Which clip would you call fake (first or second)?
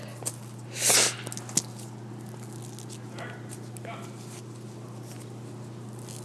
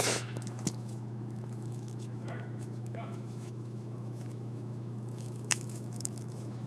second